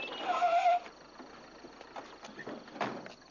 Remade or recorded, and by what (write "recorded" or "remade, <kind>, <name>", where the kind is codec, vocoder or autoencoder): recorded